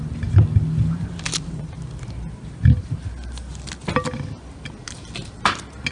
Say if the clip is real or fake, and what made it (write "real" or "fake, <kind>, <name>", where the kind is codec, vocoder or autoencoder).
real